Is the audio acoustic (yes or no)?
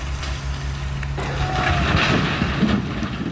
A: yes